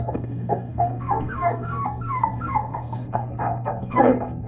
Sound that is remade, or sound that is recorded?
remade